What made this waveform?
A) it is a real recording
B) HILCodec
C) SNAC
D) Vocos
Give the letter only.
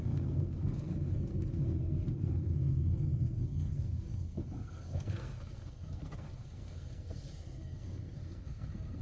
C